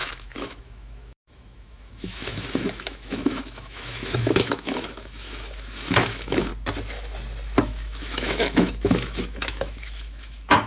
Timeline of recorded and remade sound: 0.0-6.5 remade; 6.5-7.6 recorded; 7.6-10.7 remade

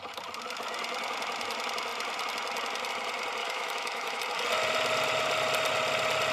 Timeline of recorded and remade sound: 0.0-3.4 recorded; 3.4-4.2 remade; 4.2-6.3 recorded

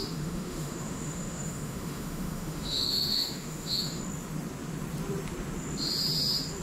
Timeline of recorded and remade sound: 0.0-4.0 remade; 4.0-6.6 recorded

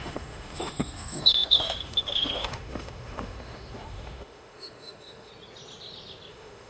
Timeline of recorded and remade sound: 0.0-5.3 remade; 5.3-6.3 recorded; 6.3-6.7 remade

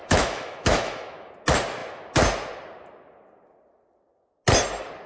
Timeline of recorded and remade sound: 0.0-1.3 remade; 1.3-5.1 recorded

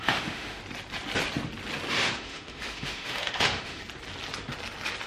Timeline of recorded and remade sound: 0.0-0.6 remade; 0.6-1.9 recorded; 1.9-3.8 remade; 3.8-5.1 recorded

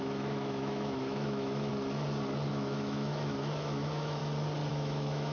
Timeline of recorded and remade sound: 0.0-1.7 remade; 1.7-2.5 recorded; 2.5-4.2 remade; 4.2-4.7 recorded; 4.7-5.3 remade

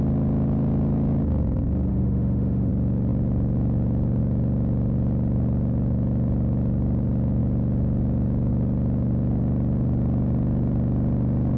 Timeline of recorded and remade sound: 0.0-1.9 recorded; 1.9-2.7 remade; 2.7-11.6 recorded